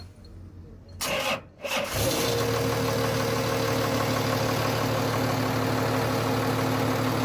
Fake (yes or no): no